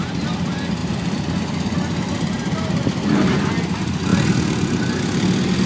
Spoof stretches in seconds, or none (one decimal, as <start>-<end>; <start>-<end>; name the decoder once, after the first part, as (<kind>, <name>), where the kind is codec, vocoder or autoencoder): none